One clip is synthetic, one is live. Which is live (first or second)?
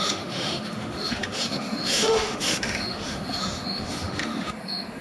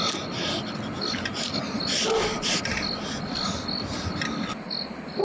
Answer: second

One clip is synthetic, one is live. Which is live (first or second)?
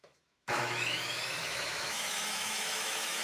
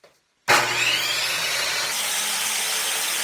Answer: second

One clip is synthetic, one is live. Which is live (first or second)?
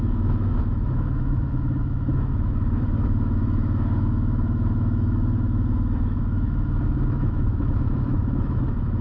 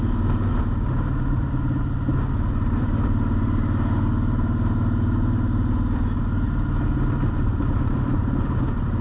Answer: second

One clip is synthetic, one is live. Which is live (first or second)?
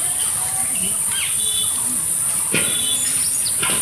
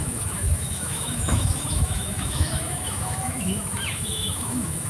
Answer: first